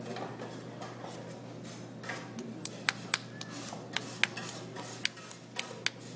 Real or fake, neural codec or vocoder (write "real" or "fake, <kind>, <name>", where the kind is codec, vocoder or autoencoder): real